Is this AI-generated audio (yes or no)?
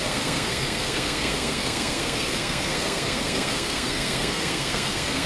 yes